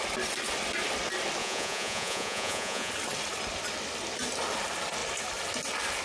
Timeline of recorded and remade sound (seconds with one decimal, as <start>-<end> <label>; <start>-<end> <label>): 0.0-1.4 recorded; 1.4-2.9 remade; 2.9-6.0 recorded